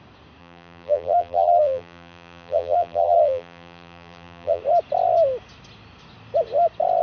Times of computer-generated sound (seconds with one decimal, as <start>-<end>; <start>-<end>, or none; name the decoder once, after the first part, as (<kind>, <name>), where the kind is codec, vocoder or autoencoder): 0.4-4.6 (vocoder, BigVGAN v2)